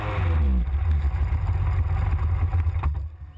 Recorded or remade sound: recorded